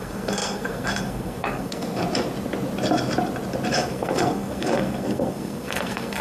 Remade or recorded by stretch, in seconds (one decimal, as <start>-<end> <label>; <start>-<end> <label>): 0.0-2.0 remade; 2.0-3.7 recorded; 3.7-6.2 remade